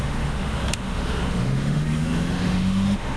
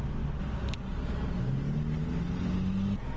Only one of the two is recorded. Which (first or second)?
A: second